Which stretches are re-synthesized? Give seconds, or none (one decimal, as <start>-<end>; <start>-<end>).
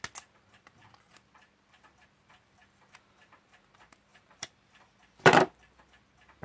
4.1-5.8